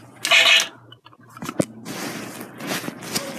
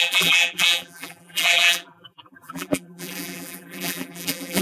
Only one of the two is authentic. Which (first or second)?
first